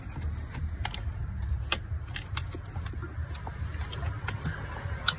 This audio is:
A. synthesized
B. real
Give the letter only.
B